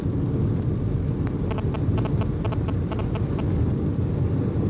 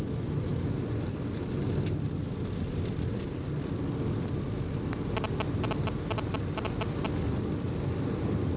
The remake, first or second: first